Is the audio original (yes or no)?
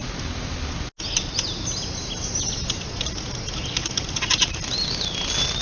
yes